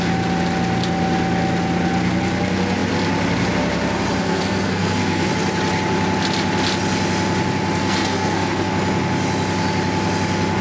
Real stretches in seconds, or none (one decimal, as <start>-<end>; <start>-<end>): 0.0-4.2; 5.3-7.8; 8.7-10.6